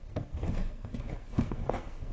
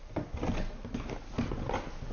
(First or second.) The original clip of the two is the second